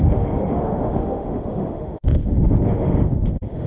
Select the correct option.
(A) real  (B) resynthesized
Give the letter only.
B